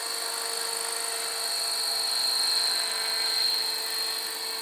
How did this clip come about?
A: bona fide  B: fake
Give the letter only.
A